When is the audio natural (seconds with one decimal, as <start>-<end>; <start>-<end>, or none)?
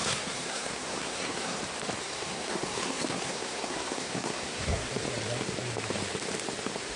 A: 1.6-2.0; 4.9-7.0